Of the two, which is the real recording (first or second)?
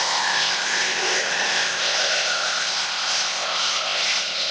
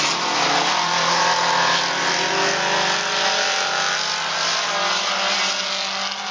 second